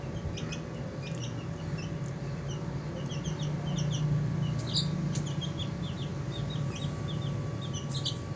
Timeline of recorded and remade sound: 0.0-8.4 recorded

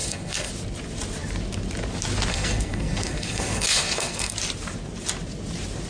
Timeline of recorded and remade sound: 0.0-0.5 remade; 0.5-2.3 recorded; 2.3-4.3 remade; 4.3-5.9 recorded

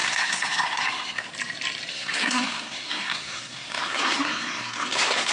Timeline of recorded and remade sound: 0.0-1.3 remade; 1.3-1.9 recorded; 1.9-5.3 remade

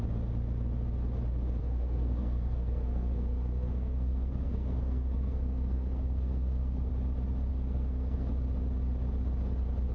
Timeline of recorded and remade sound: 0.0-1.6 recorded; 1.6-6.9 remade; 6.9-7.5 recorded; 7.5-8.3 remade; 8.3-9.9 recorded

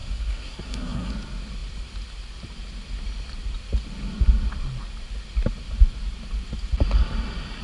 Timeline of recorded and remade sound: 0.0-1.1 remade; 1.1-7.6 recorded